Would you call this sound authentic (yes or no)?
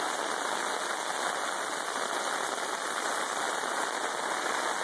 yes